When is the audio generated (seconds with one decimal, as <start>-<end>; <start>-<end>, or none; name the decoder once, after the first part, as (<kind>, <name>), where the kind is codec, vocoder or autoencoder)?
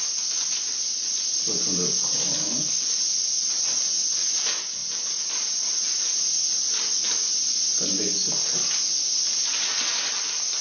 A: 2.4-3.0 (codec, DAC)